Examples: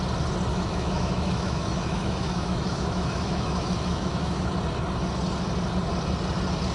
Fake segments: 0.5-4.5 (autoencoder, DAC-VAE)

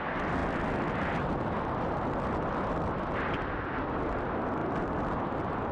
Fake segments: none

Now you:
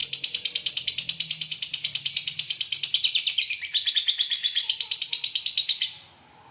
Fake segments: none